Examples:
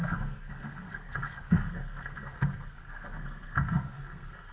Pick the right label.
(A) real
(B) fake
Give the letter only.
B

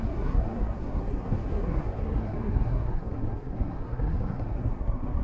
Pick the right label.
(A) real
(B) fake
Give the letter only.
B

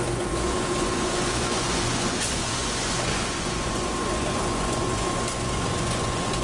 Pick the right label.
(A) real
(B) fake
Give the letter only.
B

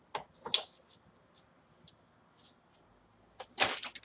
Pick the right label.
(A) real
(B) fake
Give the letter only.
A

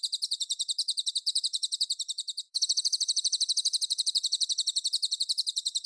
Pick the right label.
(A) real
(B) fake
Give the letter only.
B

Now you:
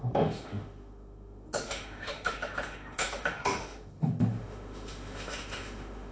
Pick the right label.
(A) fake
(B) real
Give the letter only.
A